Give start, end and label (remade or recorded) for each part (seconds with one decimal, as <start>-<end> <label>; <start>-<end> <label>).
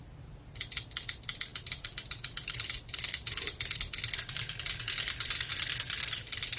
0.0-6.6 recorded